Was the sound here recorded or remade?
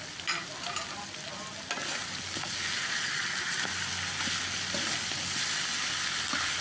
recorded